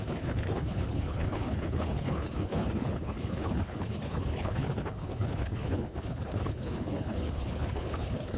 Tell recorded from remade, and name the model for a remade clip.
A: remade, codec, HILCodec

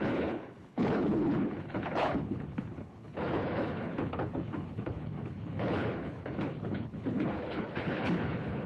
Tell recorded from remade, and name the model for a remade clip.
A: remade, codec, HILCodec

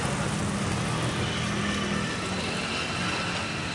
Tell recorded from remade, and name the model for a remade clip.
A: recorded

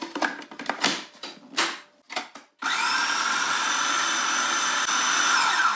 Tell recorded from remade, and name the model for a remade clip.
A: recorded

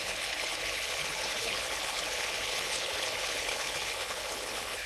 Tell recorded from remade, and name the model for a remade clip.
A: remade, codec, HILCodec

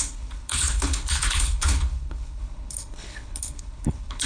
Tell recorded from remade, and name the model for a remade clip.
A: remade, codec, HILCodec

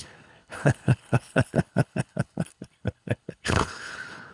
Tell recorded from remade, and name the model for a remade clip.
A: remade, codec, HILCodec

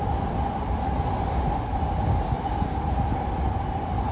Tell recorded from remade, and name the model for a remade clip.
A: recorded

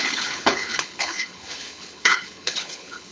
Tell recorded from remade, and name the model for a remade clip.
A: remade, codec, HILCodec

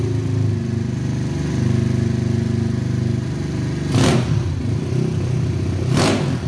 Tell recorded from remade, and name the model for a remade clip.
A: recorded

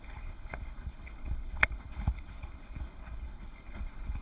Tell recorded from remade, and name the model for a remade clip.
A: remade, codec, HILCodec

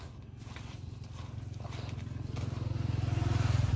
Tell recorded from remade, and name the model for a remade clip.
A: recorded